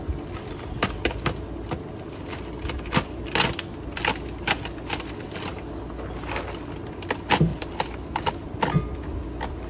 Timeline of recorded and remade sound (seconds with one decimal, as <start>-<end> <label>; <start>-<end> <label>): 0.0-7.5 recorded; 7.5-8.3 remade; 8.3-9.7 recorded